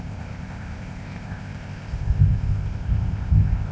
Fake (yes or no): yes